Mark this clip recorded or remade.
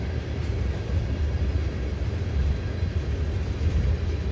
recorded